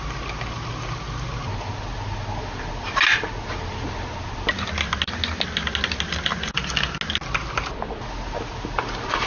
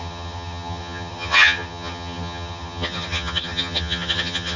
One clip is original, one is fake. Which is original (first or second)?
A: first